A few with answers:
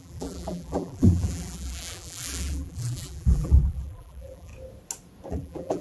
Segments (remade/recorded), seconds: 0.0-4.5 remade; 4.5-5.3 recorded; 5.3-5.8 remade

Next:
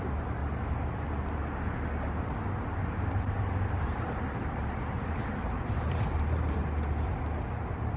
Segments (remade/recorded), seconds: 0.0-0.4 remade; 0.4-2.7 recorded; 2.7-6.6 remade; 6.6-7.6 recorded; 7.6-8.0 remade

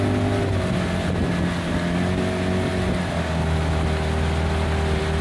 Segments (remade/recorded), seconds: 0.0-5.2 recorded

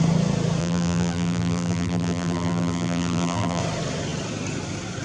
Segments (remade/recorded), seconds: 0.0-0.6 recorded; 0.6-3.6 remade; 3.6-5.0 recorded

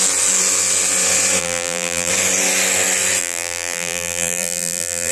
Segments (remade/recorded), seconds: 0.0-1.4 recorded; 1.4-2.1 remade; 2.1-3.2 recorded; 3.2-5.1 remade

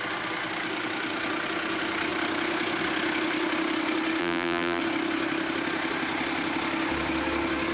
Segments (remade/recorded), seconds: 0.0-4.2 recorded; 4.2-4.8 remade; 4.8-7.7 recorded